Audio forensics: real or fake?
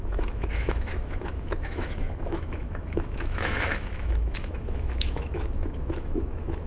fake